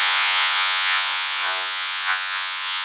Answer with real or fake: fake